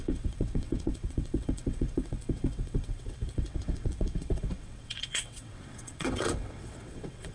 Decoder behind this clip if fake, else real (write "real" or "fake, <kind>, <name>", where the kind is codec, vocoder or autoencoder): fake, vocoder, WaveNeXt